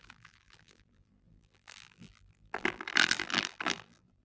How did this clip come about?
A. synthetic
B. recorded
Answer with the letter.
A